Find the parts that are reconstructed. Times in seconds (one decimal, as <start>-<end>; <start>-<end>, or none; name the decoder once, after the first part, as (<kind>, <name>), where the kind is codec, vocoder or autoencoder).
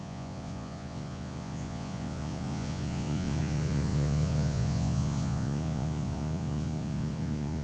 0.0-7.6 (vocoder, Vocos)